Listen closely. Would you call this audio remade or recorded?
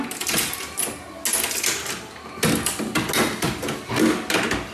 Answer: recorded